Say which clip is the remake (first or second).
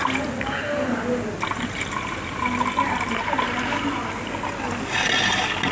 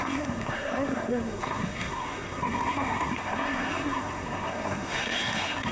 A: second